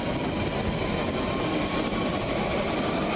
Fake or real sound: real